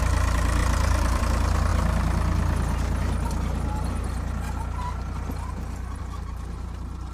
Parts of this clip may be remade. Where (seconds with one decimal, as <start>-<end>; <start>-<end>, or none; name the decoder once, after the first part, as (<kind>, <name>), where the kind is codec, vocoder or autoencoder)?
0.6-1.2 (vocoder, BigVGAN v2)

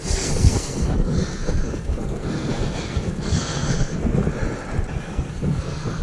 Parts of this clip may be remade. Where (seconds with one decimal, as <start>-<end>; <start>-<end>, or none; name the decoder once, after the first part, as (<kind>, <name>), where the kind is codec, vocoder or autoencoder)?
0.0-4.1 (codec, SNAC); 5.0-6.0

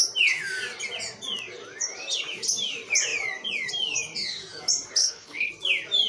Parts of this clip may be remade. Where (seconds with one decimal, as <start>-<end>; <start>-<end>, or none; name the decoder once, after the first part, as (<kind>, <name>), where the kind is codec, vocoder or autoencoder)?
5.0-5.5 (codec, HILCodec)

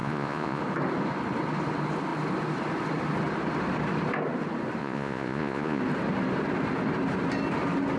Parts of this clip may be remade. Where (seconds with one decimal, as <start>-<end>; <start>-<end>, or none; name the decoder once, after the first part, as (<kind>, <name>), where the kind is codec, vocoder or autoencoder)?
0.0-0.6 (vocoder, Vocos); 4.8-5.8

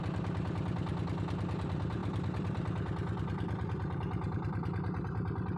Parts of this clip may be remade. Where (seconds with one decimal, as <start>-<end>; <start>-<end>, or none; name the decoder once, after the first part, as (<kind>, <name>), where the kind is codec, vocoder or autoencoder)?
2.0-5.6 (vocoder, BigVGAN v2)

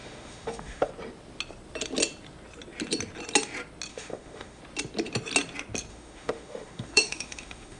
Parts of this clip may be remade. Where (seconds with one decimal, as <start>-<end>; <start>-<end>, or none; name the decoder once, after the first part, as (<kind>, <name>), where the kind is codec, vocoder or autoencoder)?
0.0-0.9 (autoencoder, DAC-VAE); 3.9-4.6; 5.9-7.8